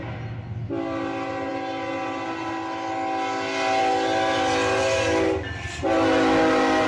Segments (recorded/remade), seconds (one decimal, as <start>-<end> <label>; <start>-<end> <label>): 0.0-6.9 recorded